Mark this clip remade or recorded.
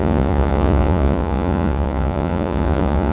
remade